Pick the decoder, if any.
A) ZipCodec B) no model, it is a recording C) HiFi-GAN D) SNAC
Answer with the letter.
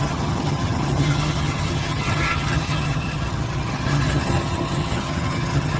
C